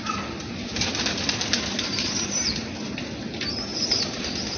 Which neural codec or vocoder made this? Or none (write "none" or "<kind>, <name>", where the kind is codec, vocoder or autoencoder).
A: none